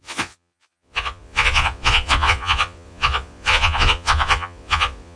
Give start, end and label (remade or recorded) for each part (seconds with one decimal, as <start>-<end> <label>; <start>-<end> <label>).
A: 0.0-5.2 remade